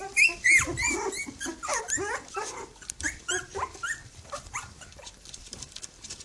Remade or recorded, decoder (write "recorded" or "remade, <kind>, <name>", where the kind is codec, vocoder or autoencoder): remade, vocoder, BigVGAN v2